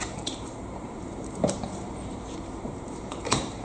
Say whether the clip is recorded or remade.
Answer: remade